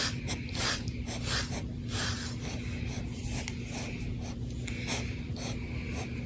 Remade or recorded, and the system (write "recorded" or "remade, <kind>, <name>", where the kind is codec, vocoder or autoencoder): recorded